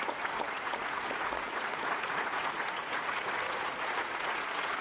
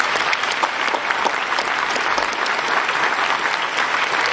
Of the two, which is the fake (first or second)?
first